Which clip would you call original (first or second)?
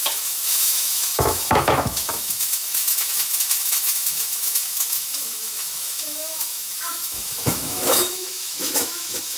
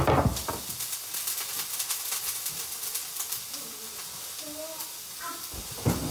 second